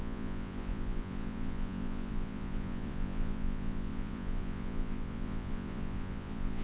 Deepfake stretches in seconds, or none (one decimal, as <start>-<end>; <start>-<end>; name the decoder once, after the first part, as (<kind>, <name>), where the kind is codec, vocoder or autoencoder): 0.0-6.6 (vocoder, Vocos)